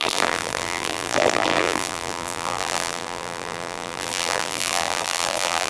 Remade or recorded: remade